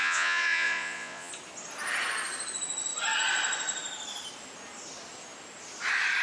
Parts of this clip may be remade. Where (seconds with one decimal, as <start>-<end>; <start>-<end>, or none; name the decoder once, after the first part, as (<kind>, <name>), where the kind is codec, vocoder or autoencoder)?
0.0-1.3 (vocoder, Vocos)